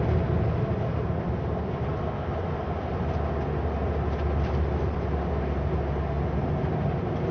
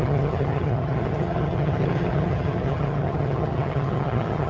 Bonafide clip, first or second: first